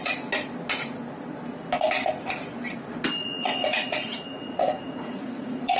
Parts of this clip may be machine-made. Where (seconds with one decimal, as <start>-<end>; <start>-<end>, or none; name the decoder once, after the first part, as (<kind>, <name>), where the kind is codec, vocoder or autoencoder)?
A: 3.2-5.8 (vocoder, Vocos)

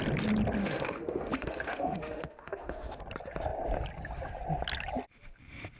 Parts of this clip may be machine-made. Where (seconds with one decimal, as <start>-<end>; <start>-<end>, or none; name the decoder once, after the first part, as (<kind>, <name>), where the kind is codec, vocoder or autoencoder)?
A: 0.6-3.0 (autoencoder, DAC-VAE)

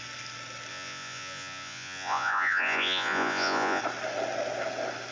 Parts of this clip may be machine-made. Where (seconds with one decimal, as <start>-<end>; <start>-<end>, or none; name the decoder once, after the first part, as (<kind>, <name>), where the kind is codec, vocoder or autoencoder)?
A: 0.7-3.8 (vocoder, Vocos)

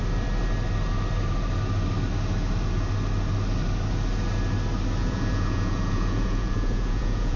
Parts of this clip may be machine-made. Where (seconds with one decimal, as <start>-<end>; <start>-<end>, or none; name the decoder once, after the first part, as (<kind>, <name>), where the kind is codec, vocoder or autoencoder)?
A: 5.0-7.4 (vocoder, Vocos)

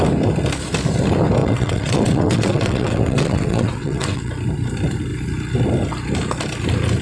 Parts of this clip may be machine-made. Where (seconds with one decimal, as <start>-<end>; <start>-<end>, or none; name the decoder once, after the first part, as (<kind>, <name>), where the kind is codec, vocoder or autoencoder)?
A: 1.4-4.3 (vocoder, WaveNeXt)

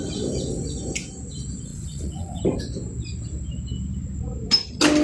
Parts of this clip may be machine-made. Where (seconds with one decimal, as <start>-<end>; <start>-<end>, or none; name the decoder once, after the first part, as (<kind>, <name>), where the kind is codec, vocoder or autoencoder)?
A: 1.7-2.4 (vocoder, WaveNeXt)